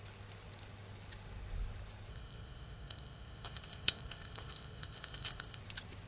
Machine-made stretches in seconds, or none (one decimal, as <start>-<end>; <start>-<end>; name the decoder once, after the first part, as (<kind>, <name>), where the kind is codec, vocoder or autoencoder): 2.1-5.6 (codec, ZipCodec)